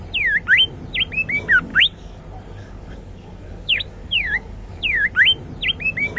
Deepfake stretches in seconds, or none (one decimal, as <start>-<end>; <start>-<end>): 1.7-2.2; 2.6-5.1